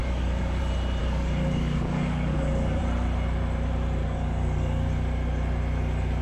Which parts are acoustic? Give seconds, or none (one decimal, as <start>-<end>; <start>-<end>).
0.6-1.0; 2.8-4.0; 4.9-6.2